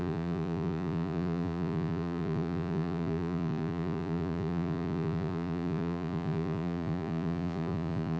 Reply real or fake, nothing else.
fake